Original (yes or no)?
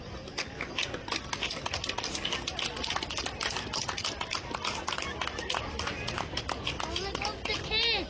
yes